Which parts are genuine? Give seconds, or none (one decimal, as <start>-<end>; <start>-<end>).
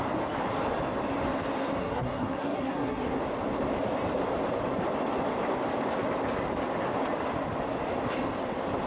0.0-1.8; 3.2-8.9